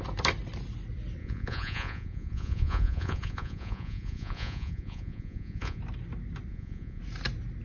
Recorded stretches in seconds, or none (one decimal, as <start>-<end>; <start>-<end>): 0.0-1.2; 5.8-6.5; 7.0-7.6